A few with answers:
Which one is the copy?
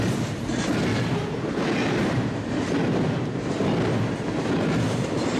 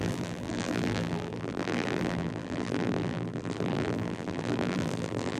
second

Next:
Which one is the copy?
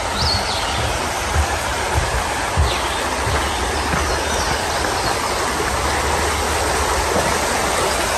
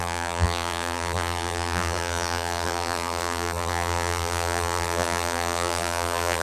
second